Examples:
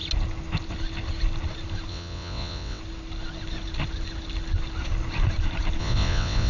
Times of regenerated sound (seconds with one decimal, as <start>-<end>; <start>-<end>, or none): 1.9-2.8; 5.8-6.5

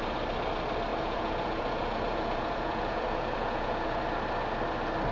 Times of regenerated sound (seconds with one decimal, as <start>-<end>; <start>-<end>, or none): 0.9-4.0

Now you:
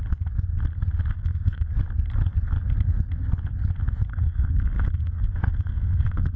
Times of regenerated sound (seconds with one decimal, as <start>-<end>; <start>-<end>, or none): 1.0-1.7; 4.1-6.4

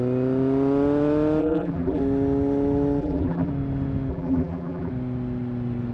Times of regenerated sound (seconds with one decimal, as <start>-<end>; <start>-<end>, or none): 1.4-2.0; 3.0-3.5; 4.1-4.9

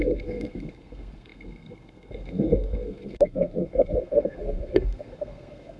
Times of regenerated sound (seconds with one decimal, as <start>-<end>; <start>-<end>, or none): 0.0-5.8